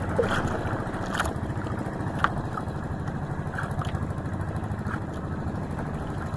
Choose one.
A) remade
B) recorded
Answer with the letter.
B